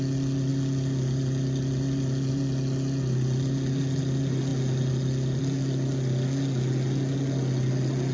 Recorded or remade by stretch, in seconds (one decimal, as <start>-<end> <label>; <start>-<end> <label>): 0.0-8.1 recorded